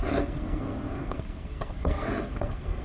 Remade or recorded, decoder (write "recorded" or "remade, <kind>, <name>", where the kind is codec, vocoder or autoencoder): remade, codec, SNAC